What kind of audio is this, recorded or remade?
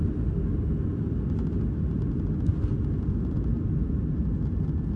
recorded